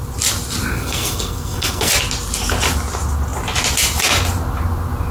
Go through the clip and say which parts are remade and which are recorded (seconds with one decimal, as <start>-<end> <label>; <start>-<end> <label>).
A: 0.0-0.7 recorded; 0.7-1.9 remade; 1.9-5.1 recorded